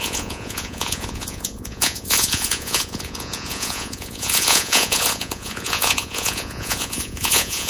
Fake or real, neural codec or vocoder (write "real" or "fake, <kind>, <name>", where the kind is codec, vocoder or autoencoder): fake, vocoder, Vocos